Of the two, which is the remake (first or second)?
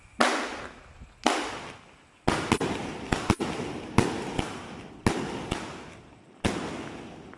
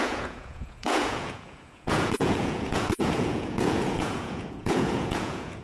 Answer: second